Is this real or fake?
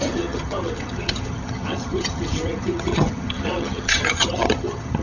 fake